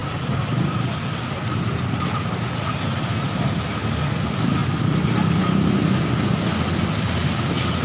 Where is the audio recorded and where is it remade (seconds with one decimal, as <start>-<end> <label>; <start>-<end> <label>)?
0.0-7.8 recorded